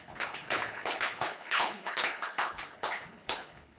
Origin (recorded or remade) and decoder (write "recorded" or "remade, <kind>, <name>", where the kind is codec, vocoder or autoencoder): remade, codec, HILCodec